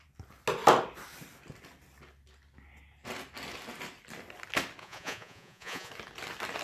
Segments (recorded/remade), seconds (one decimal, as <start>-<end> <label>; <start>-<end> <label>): 0.0-4.8 recorded; 4.8-5.9 remade; 5.9-6.6 recorded